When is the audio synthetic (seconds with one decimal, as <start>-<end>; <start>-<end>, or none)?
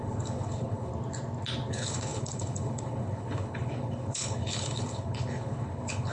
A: 0.0-0.9; 1.7-6.1